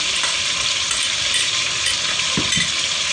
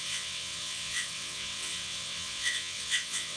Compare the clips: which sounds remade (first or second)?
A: second